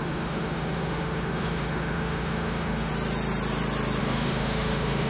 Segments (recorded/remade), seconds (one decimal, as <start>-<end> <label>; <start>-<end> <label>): 0.0-2.9 remade; 2.9-4.0 recorded; 4.0-5.1 remade